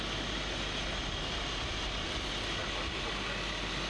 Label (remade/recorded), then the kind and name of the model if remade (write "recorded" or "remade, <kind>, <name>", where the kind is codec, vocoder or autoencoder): recorded